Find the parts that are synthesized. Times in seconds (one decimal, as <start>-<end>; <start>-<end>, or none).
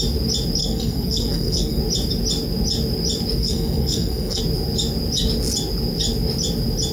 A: 0.6-1.8; 3.4-4.4